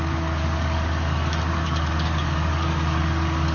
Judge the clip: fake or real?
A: fake